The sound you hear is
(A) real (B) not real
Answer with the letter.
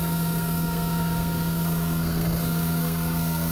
B